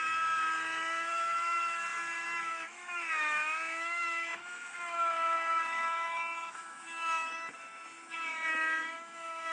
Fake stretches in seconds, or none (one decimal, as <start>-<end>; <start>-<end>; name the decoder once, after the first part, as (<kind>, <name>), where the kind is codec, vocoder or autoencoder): 0.0-9.5 (autoencoder, DAC-VAE)